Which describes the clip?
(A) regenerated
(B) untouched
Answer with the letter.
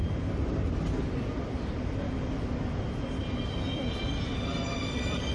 B